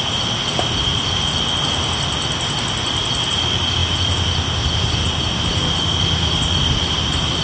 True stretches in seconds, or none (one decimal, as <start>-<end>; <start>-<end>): 0.0-7.4